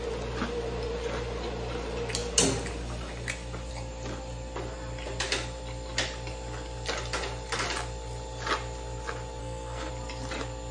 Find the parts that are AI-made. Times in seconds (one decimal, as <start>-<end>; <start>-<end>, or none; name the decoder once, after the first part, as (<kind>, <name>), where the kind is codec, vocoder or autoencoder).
9.4-9.9 (codec, SNAC)